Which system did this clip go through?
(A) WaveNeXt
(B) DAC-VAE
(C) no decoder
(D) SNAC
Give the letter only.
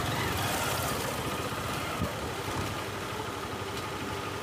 C